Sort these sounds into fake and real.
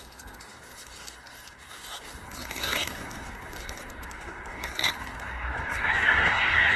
fake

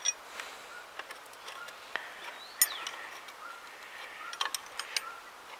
real